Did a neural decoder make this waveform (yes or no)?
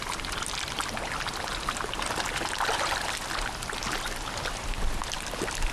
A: no